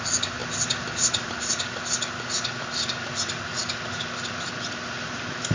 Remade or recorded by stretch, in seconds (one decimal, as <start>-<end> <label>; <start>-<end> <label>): 0.0-5.5 recorded